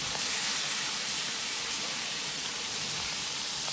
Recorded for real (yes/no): no